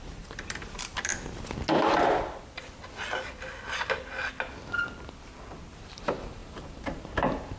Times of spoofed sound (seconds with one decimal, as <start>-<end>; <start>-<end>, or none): 0.0-1.1; 5.7-7.6